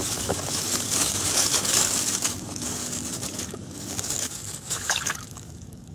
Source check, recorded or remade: remade